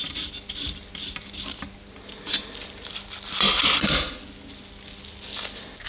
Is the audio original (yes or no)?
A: yes